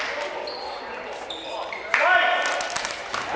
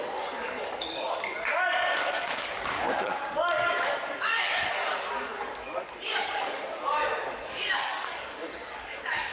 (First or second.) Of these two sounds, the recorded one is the first